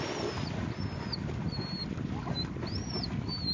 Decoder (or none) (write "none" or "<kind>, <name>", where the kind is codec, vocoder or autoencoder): none